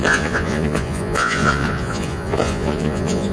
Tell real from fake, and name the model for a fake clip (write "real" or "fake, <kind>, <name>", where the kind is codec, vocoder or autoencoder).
fake, vocoder, Vocos